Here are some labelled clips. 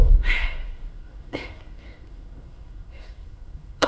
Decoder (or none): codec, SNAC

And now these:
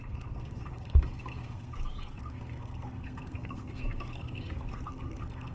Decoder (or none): codec, SNAC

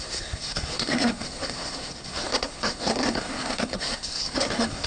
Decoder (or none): codec, SNAC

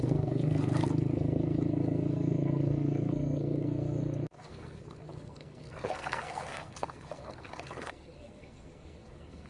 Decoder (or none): codec, SNAC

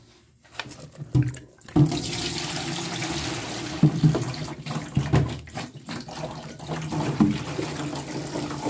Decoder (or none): none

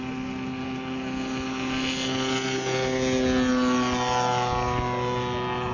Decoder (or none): none